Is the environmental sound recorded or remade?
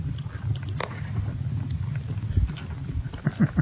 recorded